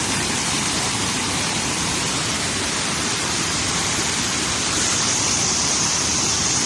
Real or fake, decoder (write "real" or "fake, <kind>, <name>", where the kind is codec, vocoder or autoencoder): fake, vocoder, BigVGAN v2